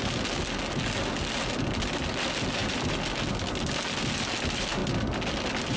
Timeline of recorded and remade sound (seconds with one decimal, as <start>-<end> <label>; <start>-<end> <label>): 0.0-5.8 recorded